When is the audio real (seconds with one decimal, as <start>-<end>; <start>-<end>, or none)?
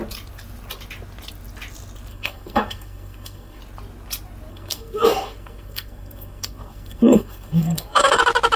0.0-2.1; 3.6-4.5; 8.2-8.6